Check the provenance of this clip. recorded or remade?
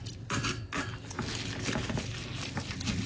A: recorded